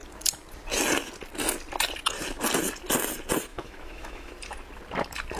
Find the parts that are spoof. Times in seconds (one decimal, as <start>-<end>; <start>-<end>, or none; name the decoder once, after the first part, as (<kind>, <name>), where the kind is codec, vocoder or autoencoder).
3.5-4.3 (autoencoder, DAC-VAE)